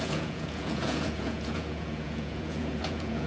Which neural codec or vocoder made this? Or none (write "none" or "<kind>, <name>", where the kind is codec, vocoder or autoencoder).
vocoder, Vocos